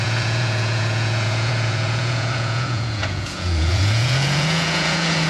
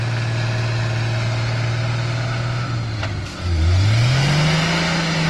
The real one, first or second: second